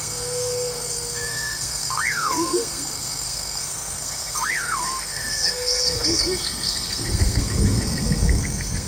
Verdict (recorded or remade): remade